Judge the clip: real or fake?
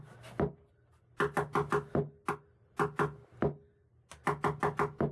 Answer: real